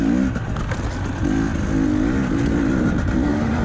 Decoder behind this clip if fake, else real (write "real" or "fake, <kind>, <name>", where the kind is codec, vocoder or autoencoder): real